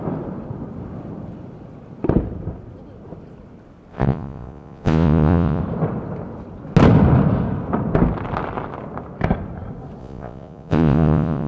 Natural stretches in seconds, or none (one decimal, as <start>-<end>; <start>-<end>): 0.0-3.9; 5.6-10.0